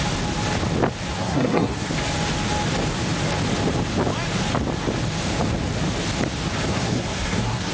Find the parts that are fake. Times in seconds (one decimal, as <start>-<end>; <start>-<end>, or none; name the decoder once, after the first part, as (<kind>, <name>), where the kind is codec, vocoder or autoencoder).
1.1-1.9 (codec, SNAC); 6.7-7.7